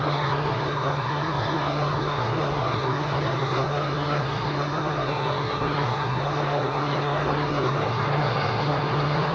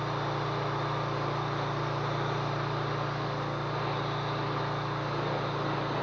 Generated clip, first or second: first